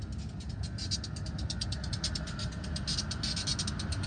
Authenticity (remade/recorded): recorded